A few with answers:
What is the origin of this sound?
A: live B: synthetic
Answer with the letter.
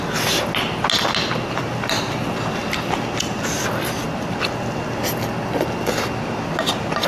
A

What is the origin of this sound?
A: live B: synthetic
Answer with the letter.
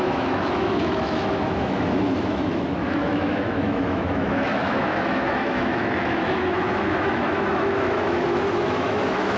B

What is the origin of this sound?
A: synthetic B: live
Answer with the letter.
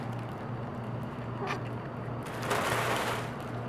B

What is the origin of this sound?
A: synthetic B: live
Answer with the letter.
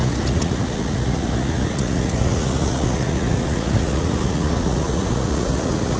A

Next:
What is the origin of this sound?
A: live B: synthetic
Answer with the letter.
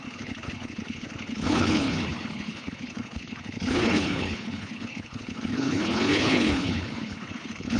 B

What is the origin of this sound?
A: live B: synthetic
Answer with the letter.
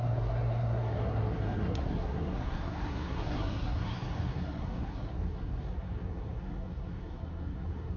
B